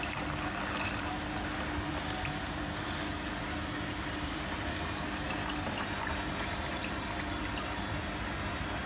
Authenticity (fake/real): real